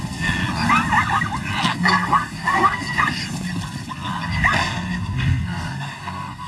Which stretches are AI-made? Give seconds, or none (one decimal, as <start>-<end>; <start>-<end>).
0.0-0.4; 1.6-3.2; 4.5-6.5